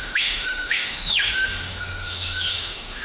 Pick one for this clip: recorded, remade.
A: remade